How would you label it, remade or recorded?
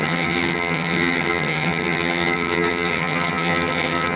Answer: remade